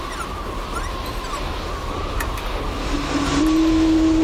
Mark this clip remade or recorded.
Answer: recorded